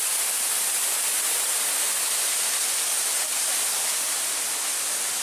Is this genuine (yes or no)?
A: yes